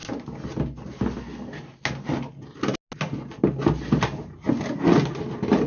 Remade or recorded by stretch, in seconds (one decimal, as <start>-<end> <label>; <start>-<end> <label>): 0.0-5.7 recorded